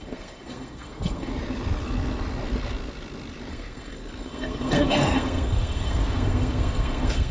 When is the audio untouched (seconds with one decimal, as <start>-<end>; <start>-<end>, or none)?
1.3-3.5